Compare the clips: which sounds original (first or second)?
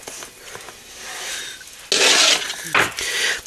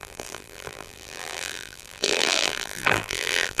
first